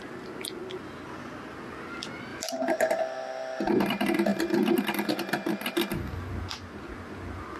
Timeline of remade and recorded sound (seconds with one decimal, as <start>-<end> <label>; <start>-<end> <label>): 0.0-2.3 recorded; 2.3-3.0 remade; 3.0-7.6 recorded